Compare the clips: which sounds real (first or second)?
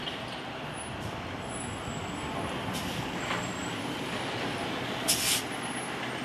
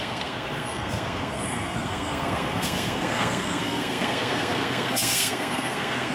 first